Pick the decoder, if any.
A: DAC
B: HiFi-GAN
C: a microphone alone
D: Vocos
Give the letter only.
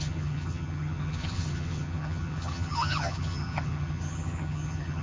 B